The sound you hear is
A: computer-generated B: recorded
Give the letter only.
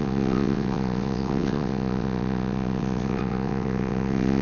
A